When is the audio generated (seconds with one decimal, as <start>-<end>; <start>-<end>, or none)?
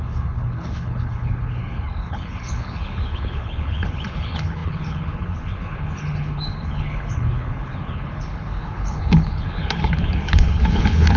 0.0-11.2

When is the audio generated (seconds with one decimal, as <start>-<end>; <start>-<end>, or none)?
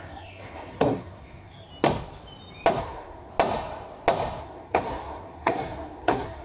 0.0-1.7; 2.8-3.3; 4.4-6.4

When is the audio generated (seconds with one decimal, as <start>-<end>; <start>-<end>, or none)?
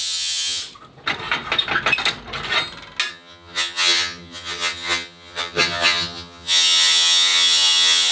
0.0-0.6; 3.1-8.1